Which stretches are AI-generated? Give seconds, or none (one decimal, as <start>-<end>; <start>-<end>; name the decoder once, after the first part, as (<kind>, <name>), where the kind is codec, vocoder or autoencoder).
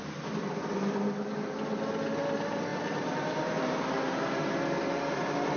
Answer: none